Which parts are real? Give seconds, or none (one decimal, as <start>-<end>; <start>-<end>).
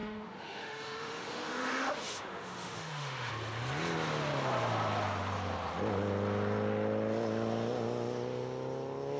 3.3-9.2